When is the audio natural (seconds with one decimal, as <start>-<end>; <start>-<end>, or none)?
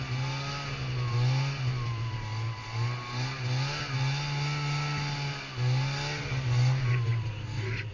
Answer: 0.0-7.9